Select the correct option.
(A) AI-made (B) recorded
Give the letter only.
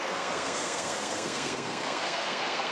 A